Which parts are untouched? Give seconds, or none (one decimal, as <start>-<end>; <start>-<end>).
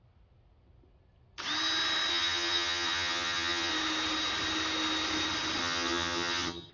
0.0-2.1; 3.7-5.6